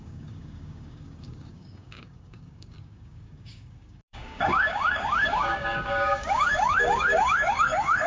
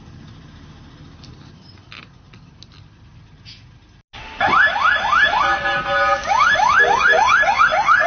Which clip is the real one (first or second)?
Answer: second